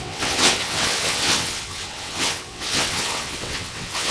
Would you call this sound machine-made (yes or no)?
yes